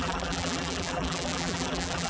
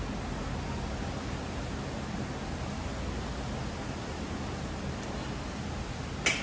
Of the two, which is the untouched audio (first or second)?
second